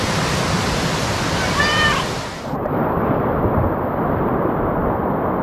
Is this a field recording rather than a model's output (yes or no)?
yes